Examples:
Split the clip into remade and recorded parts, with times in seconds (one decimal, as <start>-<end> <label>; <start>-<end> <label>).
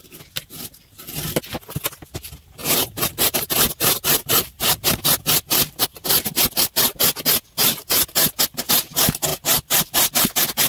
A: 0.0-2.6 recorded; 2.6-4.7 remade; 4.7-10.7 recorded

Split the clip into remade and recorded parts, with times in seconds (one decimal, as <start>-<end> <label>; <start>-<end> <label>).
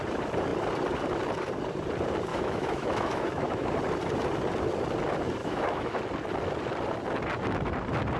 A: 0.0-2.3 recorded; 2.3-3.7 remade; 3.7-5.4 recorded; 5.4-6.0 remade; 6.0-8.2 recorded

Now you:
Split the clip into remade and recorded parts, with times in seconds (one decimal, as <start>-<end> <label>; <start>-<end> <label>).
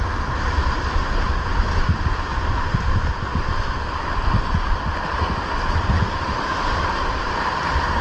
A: 0.0-2.3 recorded; 2.3-3.6 remade; 3.6-8.0 recorded